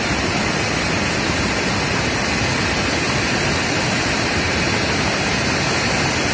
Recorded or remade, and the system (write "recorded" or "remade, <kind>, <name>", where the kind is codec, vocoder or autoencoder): recorded